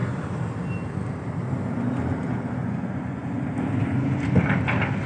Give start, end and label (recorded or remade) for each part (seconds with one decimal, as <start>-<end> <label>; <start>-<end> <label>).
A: 0.0-2.6 recorded; 2.6-3.2 remade; 3.2-5.1 recorded